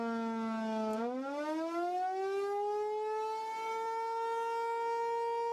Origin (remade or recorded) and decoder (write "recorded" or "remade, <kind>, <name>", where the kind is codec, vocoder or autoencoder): recorded